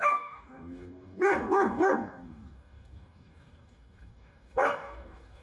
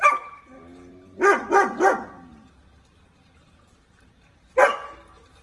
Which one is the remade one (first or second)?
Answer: first